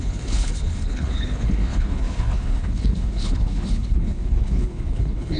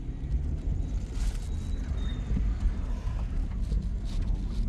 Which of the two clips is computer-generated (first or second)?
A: first